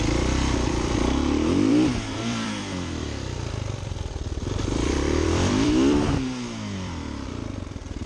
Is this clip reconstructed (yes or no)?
yes